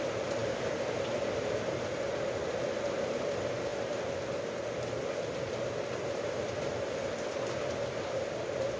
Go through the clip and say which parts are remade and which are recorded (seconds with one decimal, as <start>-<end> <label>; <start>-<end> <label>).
0.0-8.8 recorded